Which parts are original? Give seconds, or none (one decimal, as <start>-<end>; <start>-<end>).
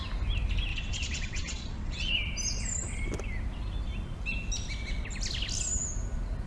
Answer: 0.0-0.7; 2.1-6.5